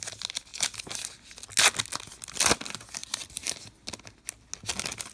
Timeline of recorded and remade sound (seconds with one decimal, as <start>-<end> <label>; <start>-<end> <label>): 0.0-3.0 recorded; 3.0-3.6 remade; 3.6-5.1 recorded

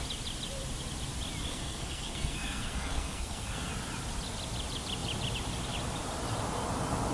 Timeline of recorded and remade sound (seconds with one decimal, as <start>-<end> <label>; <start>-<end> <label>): 0.0-1.5 recorded; 1.5-3.7 remade; 3.7-7.1 recorded

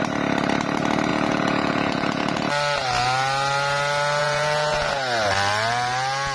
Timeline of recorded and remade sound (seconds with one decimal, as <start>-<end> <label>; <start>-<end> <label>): 0.0-1.1 recorded; 1.1-2.5 remade; 2.5-4.2 recorded; 4.2-4.9 remade; 4.9-6.3 recorded

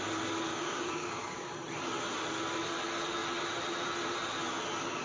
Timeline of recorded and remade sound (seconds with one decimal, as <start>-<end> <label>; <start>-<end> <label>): 0.0-0.5 recorded; 0.5-1.5 remade; 1.5-5.0 recorded

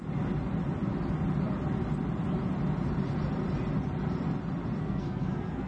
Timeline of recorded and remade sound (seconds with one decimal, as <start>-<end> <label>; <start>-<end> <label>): 0.0-4.8 recorded; 4.8-5.7 remade

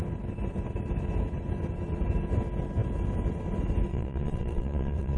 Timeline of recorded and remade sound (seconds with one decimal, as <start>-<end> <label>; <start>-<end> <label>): 0.0-3.9 recorded; 3.9-5.2 remade

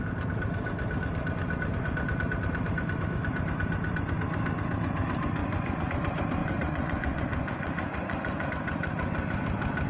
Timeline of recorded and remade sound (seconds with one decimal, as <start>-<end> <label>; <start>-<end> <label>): 0.0-5.4 recorded; 5.4-5.9 remade; 5.9-6.4 recorded; 6.4-8.5 remade; 8.5-9.9 recorded